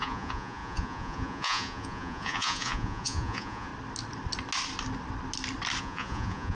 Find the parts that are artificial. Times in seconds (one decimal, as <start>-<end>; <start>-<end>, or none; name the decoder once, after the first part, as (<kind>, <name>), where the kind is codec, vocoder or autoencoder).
0.0-3.7 (vocoder, Vocos); 5.8-6.5